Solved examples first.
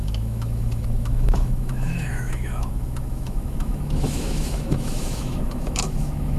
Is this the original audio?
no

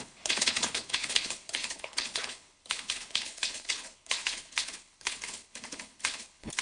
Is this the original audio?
no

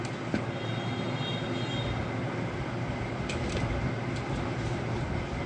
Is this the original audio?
yes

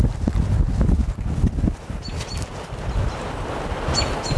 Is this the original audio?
yes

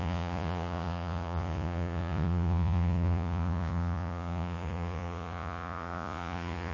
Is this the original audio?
no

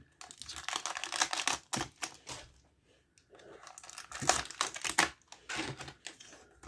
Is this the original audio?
yes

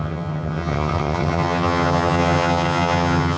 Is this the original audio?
no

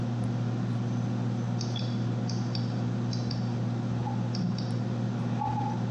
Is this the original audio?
yes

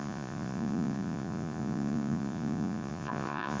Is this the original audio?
no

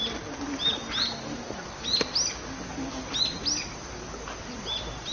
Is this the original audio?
yes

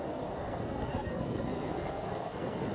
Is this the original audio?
no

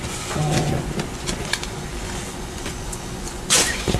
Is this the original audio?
no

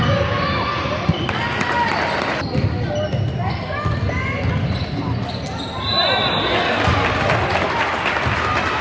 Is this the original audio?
yes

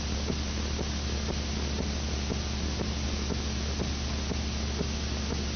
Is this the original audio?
yes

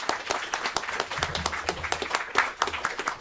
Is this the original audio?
yes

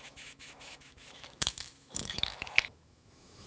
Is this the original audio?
no